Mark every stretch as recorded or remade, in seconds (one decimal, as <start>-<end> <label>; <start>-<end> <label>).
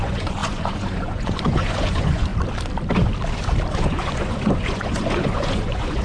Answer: 0.0-2.3 remade; 2.3-3.7 recorded; 3.7-6.0 remade